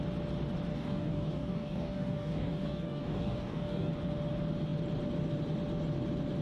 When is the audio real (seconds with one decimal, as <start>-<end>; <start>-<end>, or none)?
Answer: 0.0-0.7; 3.9-6.4